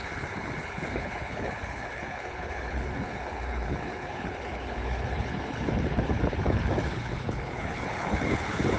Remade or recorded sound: remade